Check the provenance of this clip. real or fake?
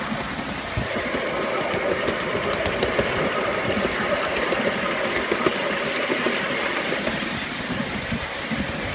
real